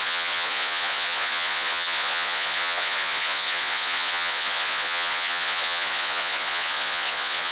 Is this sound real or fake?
fake